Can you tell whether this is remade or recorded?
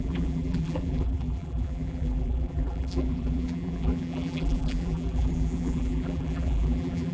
remade